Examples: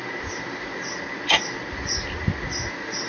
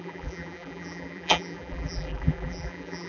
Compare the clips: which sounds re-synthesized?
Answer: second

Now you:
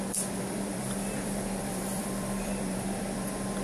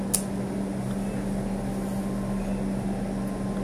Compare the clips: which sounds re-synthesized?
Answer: first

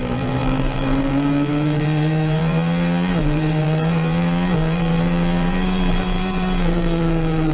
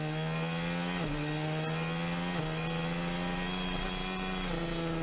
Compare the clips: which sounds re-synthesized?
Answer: first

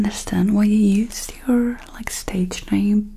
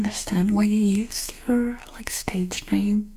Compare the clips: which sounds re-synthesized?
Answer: second